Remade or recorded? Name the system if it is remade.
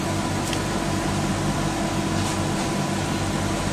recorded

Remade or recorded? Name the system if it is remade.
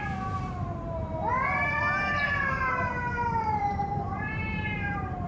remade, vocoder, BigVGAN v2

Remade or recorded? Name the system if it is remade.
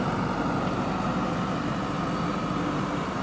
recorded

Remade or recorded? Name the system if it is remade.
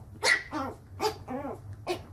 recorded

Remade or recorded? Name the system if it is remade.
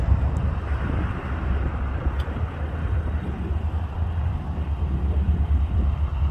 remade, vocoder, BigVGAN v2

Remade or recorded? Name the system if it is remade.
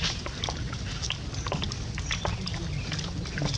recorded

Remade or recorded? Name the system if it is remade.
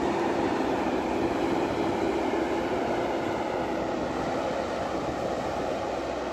recorded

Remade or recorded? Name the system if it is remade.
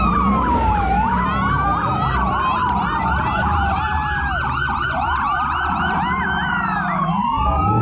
remade, vocoder, BigVGAN v2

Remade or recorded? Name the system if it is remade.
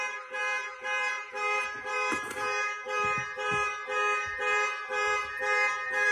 remade, vocoder, BigVGAN v2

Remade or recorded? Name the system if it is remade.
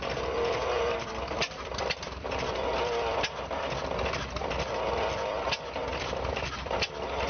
remade, vocoder, BigVGAN v2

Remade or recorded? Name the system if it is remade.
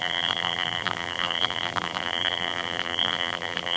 remade, vocoder, BigVGAN v2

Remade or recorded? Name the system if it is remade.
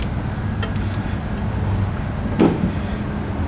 recorded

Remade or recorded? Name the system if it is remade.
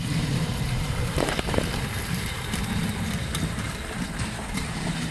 remade, vocoder, BigVGAN v2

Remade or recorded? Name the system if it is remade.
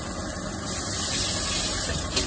recorded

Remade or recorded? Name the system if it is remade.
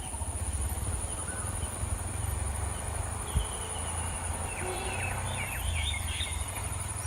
recorded